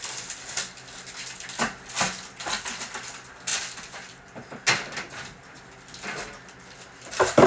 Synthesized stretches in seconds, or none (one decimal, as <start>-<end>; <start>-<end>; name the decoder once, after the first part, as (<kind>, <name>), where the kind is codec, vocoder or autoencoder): 3.5-4.5 (vocoder, BigVGAN v2)